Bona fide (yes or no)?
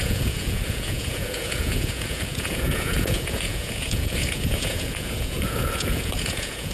no